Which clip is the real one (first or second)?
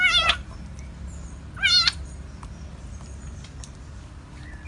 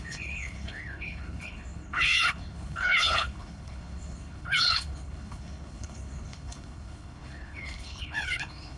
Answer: first